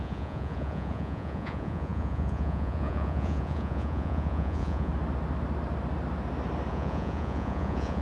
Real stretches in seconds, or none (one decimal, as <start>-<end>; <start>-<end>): 4.9-6.7